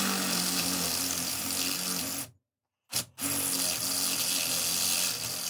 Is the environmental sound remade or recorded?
recorded